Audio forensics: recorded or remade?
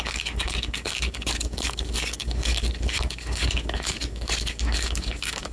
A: remade